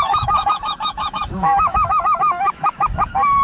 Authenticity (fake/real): fake